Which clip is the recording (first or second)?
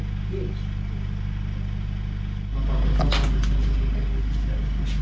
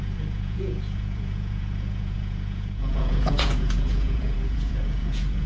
first